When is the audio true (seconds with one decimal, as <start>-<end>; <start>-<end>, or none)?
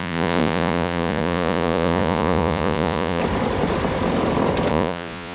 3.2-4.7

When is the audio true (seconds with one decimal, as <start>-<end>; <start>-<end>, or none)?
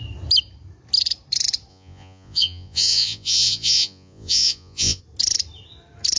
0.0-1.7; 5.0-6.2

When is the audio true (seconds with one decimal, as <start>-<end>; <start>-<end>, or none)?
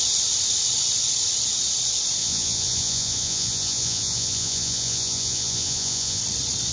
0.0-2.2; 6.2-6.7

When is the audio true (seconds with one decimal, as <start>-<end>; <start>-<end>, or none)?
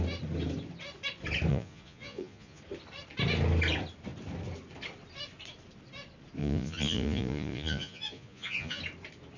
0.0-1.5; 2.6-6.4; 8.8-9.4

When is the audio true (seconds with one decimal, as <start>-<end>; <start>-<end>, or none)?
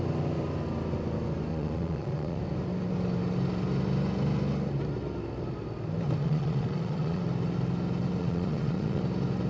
0.0-1.5; 2.4-6.2; 7.2-8.2; 9.0-9.5